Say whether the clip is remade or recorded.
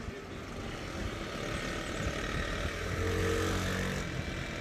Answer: recorded